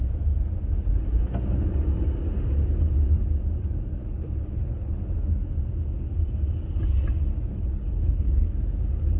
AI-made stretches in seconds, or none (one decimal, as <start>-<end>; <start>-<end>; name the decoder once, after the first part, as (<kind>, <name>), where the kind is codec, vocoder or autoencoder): 4.0-5.0 (codec, HILCodec); 7.5-8.5